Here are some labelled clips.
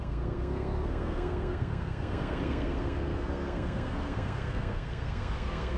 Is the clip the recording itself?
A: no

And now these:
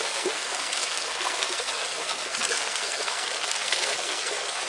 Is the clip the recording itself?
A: no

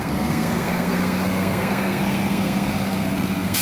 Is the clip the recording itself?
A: no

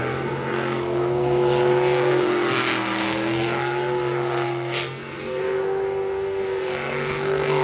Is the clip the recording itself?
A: no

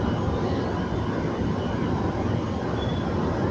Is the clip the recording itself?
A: yes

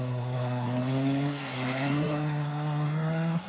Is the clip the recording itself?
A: no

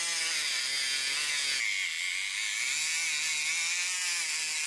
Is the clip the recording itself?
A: yes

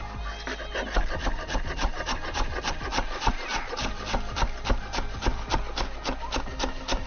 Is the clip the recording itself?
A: yes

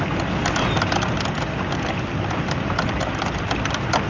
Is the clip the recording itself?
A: yes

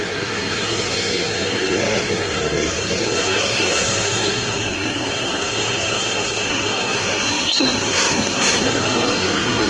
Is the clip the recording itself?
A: no